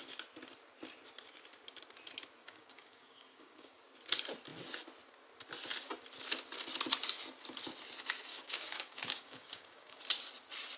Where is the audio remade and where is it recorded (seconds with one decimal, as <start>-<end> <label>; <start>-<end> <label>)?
0.0-2.4 recorded; 2.4-3.7 remade; 3.7-8.3 recorded; 8.3-10.0 remade; 10.0-10.8 recorded